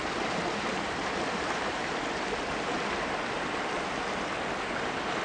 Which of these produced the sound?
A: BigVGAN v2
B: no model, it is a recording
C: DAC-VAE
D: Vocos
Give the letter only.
B